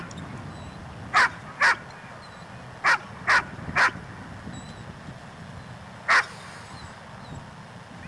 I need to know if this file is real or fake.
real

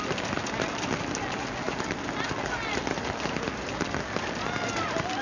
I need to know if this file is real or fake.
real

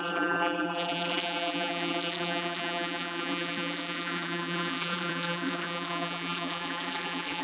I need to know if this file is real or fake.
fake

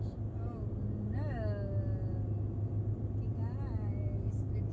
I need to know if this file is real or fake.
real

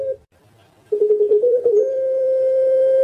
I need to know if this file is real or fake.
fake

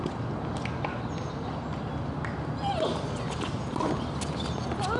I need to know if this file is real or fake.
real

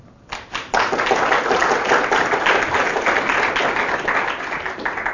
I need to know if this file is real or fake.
real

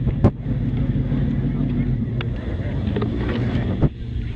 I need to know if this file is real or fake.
real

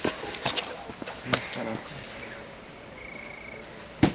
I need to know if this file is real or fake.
real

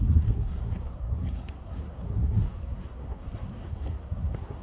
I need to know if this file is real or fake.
fake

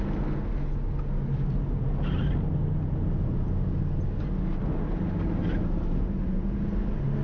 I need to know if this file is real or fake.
real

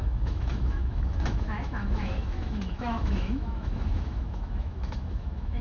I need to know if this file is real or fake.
fake